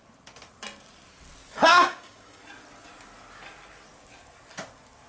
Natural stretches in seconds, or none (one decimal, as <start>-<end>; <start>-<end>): 0.0-1.7; 2.4-5.1